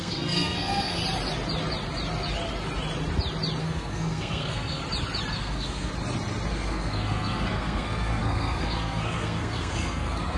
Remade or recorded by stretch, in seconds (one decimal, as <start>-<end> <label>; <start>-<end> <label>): 0.0-1.0 remade; 1.0-3.6 recorded; 3.6-4.8 remade; 4.8-5.3 recorded; 5.3-5.9 remade; 5.9-6.5 recorded; 6.5-10.4 remade